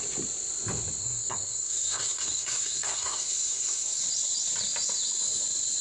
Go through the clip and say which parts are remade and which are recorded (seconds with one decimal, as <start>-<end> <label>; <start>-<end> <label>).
0.0-1.0 recorded; 1.0-4.0 remade; 4.0-5.8 recorded